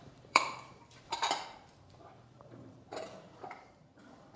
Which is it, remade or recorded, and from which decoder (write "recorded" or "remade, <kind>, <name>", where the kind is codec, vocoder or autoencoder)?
remade, vocoder, BigVGAN v2